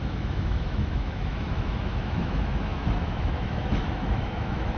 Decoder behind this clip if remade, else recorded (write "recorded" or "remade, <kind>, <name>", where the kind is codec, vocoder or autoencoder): remade, autoencoder, DAC-VAE